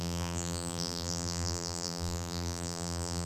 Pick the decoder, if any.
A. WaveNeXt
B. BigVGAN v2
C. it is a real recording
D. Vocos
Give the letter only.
B